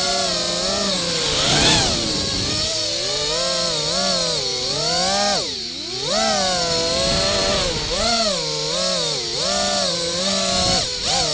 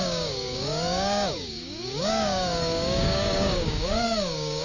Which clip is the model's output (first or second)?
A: second